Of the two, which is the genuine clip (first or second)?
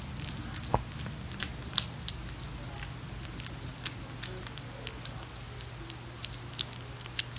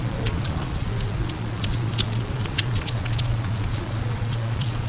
first